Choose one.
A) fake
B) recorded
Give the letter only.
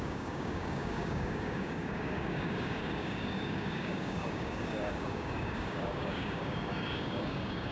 A